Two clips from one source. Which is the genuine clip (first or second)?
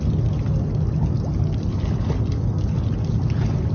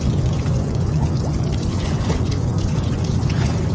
first